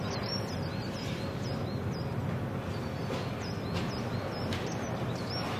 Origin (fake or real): real